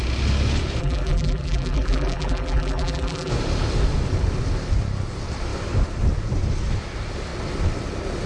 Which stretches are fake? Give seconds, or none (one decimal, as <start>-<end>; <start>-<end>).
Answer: 0.8-3.3